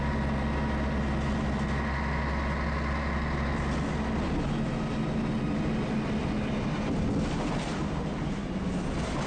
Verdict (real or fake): real